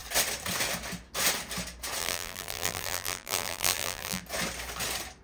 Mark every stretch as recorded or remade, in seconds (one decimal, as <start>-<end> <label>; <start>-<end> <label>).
0.0-2.0 recorded; 2.0-4.2 remade; 4.2-5.2 recorded